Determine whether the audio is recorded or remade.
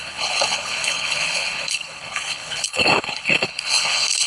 remade